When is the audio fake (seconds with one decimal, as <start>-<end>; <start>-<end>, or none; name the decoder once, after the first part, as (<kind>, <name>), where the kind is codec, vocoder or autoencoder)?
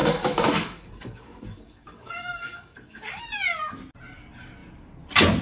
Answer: 0.0-3.2 (codec, DAC)